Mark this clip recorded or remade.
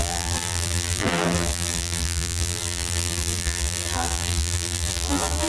remade